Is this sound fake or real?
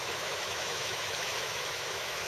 fake